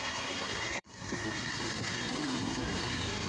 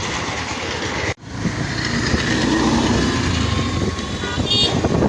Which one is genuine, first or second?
second